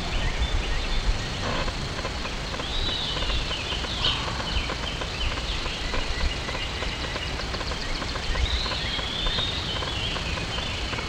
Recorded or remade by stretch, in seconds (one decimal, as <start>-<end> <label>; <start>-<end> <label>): 0.0-11.1 remade